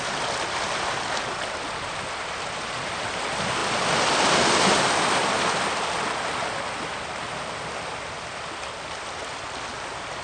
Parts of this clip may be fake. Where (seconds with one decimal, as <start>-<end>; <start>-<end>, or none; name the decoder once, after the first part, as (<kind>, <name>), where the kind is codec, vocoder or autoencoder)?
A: none